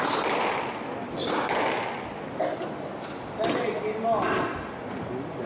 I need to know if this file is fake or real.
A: real